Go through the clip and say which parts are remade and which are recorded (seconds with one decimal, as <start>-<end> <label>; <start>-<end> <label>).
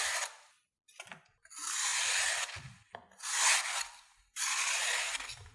0.0-5.5 recorded